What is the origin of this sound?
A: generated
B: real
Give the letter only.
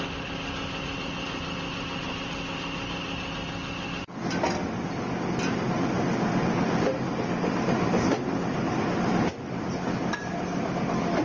B